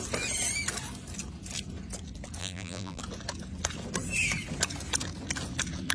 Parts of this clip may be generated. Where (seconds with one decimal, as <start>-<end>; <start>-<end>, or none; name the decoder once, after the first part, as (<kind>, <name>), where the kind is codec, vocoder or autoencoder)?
2.4-3.0 (vocoder, BigVGAN v2)